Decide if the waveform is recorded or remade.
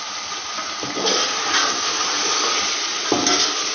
recorded